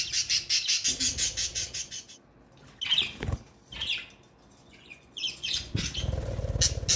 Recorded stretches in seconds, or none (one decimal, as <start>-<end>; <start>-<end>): 0.0-1.5; 2.1-4.6; 5.8-7.0